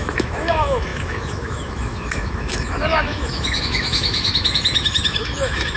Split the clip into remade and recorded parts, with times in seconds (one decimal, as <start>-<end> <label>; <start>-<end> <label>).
0.0-5.8 remade